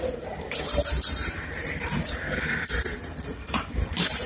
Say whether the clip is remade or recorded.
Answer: remade